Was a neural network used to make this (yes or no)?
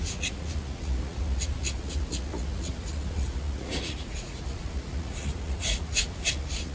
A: yes